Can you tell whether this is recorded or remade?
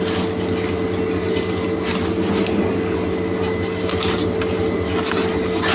recorded